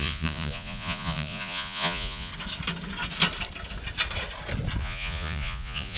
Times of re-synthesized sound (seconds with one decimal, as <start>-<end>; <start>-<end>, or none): 0.0-2.3; 4.8-6.0